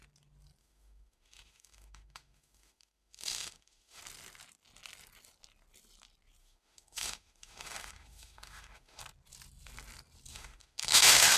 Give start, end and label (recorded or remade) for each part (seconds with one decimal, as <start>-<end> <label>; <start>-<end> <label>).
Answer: 0.0-0.6 recorded; 0.6-4.0 remade; 4.0-6.4 recorded; 6.4-9.0 remade; 9.0-10.3 recorded; 10.3-11.4 remade